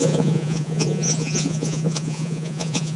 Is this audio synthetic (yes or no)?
yes